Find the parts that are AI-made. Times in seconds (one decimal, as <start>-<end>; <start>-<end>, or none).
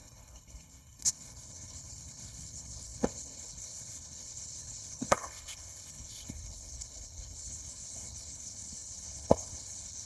0.0-10.1